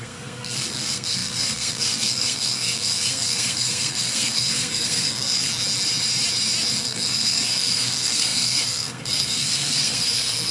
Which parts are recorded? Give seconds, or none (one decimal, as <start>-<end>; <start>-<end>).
5.5-6.8